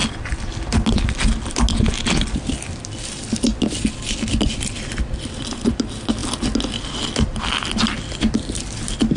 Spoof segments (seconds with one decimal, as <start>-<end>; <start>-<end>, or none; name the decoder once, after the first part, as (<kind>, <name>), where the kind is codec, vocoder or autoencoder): none